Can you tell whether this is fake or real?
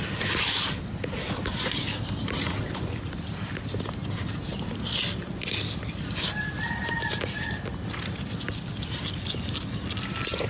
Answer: real